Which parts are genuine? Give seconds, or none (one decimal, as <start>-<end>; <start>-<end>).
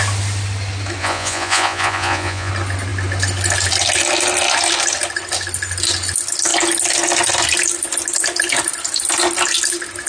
0.0-1.0; 2.5-10.1